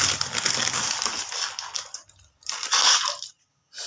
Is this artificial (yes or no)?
no